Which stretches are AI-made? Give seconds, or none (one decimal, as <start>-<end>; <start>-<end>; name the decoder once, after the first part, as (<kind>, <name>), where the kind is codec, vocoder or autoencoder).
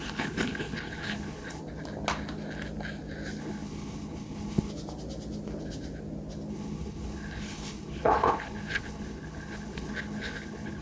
0.0-1.6 (codec, HILCodec); 3.4-4.7; 6.5-10.8